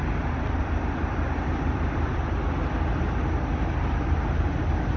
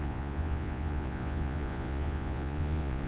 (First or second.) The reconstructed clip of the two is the second